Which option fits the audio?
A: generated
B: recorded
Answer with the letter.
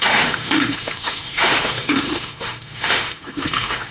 A